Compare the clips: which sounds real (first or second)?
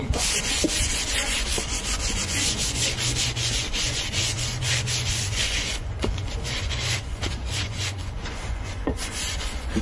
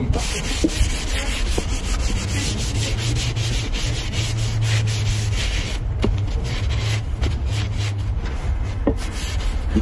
second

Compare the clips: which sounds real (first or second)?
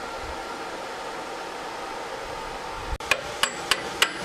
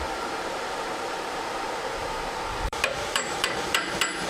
first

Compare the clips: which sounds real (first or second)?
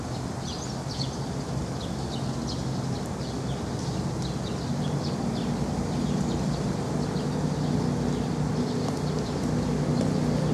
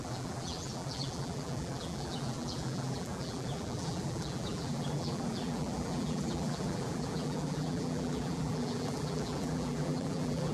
first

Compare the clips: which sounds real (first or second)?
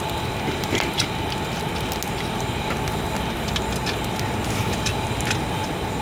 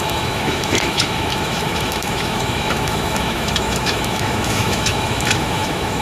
first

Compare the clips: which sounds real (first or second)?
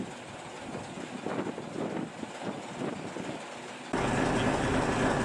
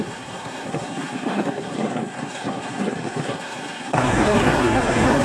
first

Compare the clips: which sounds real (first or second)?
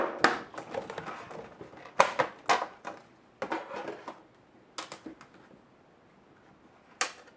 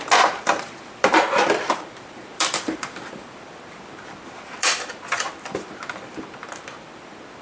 first